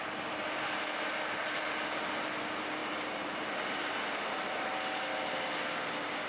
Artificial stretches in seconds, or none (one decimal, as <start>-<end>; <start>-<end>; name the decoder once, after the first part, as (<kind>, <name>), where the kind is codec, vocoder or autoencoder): 2.8-3.5 (vocoder, BigVGAN v2)

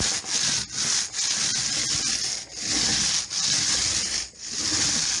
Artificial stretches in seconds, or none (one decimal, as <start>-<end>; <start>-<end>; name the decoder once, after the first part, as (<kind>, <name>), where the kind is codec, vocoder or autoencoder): none